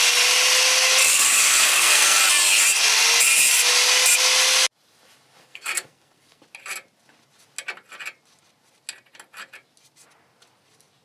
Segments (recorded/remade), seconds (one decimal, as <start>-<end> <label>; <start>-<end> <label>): 0.0-1.0 recorded; 1.0-2.2 remade; 2.2-5.4 recorded; 5.4-6.4 remade; 6.4-11.0 recorded